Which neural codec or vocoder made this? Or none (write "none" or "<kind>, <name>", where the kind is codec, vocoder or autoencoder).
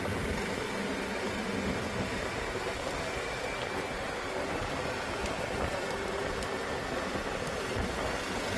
none